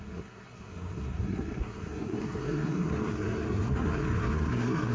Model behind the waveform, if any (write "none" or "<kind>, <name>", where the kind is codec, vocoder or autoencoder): codec, SNAC